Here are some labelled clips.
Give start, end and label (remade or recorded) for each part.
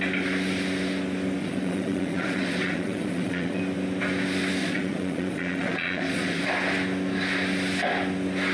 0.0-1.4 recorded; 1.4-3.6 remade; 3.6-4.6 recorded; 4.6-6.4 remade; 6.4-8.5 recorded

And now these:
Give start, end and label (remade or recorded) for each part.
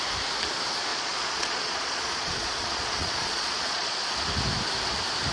0.0-0.9 recorded; 0.9-4.0 remade; 4.0-5.3 recorded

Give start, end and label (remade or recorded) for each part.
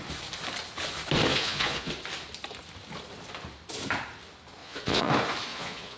0.0-1.3 recorded; 1.3-1.9 remade; 1.9-4.6 recorded; 4.6-5.1 remade; 5.1-5.5 recorded; 5.5-6.0 remade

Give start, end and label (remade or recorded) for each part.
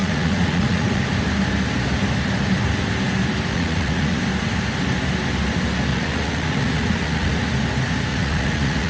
0.0-1.0 remade; 1.0-3.5 recorded; 3.5-4.2 remade; 4.2-5.9 recorded; 5.9-7.3 remade; 7.3-8.1 recorded; 8.1-8.9 remade